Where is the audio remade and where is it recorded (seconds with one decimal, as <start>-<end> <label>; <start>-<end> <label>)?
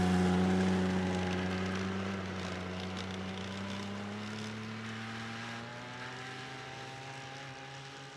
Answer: 0.0-8.2 recorded